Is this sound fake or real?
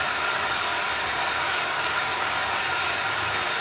fake